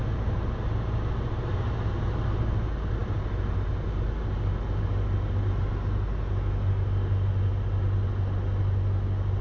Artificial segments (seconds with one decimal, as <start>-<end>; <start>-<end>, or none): none